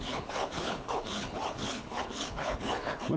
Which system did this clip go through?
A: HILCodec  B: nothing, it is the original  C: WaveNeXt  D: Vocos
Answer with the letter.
A